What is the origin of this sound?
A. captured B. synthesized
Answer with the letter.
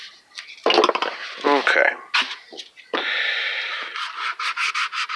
A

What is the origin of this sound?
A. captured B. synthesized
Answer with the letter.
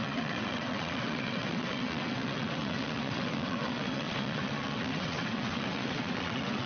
B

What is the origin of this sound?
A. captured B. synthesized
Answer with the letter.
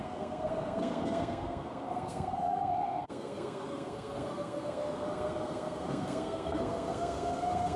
B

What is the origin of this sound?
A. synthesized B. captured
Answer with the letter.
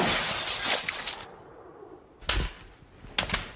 B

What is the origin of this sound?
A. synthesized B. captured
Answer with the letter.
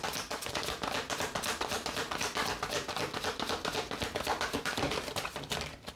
A